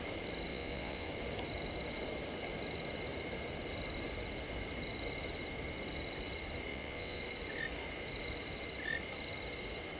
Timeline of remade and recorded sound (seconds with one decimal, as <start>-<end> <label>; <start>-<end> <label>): 0.0-0.5 recorded; 0.5-1.1 remade; 1.1-6.7 recorded; 6.7-7.2 remade; 7.2-10.0 recorded